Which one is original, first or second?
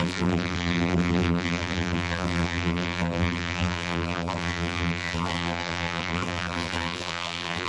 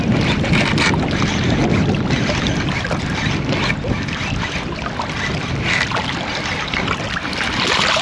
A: second